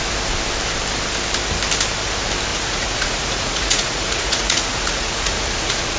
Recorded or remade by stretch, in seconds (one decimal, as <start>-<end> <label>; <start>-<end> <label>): 0.0-2.5 recorded; 2.5-6.0 remade